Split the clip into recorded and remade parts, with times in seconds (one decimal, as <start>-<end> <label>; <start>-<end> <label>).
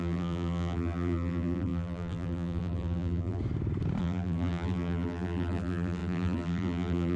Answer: 0.0-3.4 remade; 3.4-4.0 recorded; 4.0-7.2 remade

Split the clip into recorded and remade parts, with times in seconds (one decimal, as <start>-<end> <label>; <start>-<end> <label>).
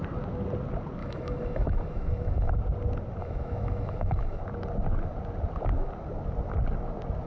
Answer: 0.0-1.0 recorded; 1.0-2.5 remade; 2.5-3.2 recorded; 3.2-4.4 remade; 4.4-7.3 recorded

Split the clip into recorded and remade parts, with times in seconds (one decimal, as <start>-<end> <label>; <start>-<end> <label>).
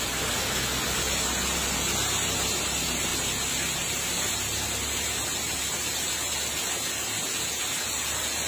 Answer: 0.0-5.3 recorded; 5.3-6.1 remade; 6.1-8.5 recorded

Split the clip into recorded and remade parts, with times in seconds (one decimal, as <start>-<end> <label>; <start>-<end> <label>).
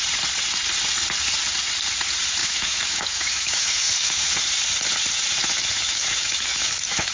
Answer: 0.0-2.4 recorded; 2.4-4.3 remade; 4.3-5.4 recorded; 5.4-7.1 remade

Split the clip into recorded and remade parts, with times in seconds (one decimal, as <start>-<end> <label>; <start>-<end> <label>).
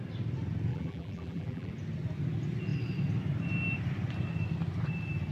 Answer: 0.0-0.7 recorded; 0.7-1.7 remade; 1.7-5.3 recorded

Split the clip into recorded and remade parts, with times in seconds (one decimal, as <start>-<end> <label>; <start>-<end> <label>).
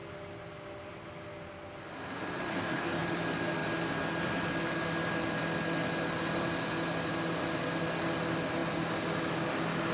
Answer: 0.0-2.5 recorded; 2.5-3.0 remade; 3.0-9.9 recorded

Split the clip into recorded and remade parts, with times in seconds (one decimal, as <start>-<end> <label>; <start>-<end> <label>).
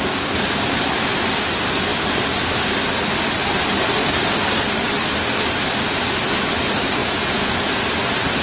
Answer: 0.0-7.0 recorded; 7.0-7.7 remade; 7.7-8.4 recorded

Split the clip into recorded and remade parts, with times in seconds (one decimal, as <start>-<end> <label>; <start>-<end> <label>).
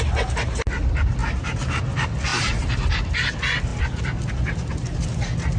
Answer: 0.0-1.2 recorded; 1.2-1.8 remade; 1.8-2.3 recorded; 2.3-2.9 remade; 2.9-5.6 recorded